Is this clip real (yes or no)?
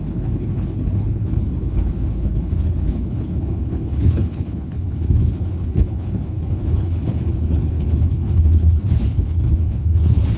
no